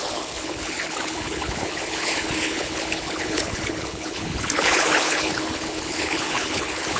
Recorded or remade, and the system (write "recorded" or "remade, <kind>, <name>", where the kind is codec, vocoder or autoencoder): remade, codec, HILCodec